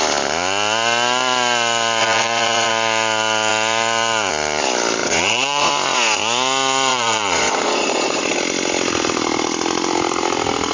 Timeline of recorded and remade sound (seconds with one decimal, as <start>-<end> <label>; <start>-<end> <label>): 0.0-2.0 recorded; 2.0-2.7 remade; 2.7-5.0 recorded; 5.0-5.7 remade; 5.7-6.9 recorded; 6.9-8.4 remade; 8.4-10.7 recorded